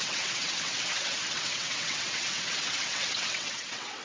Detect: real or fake fake